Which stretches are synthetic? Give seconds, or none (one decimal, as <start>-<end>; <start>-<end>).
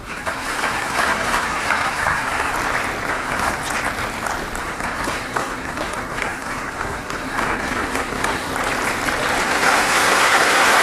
0.0-2.5; 3.1-3.6; 4.6-8.5; 9.4-10.8